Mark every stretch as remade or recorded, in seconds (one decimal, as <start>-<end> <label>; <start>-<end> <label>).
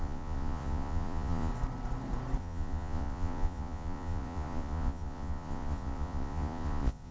0.0-1.5 remade; 1.5-2.4 recorded; 2.4-7.1 remade